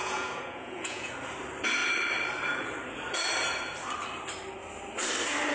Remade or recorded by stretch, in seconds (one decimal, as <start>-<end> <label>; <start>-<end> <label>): 0.0-1.1 remade; 1.1-5.5 recorded